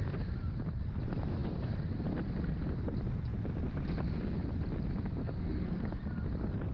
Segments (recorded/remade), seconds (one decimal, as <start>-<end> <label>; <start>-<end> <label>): 0.0-5.2 recorded; 5.2-6.0 remade; 6.0-6.7 recorded